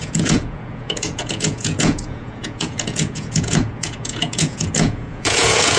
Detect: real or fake fake